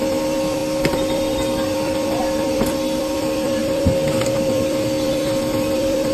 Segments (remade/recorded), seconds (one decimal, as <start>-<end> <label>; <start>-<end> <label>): 0.0-6.1 remade